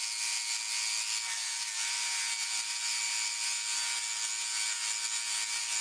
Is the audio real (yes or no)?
yes